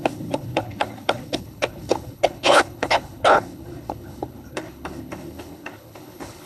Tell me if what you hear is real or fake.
fake